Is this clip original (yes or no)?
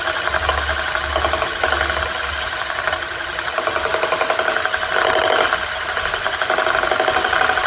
yes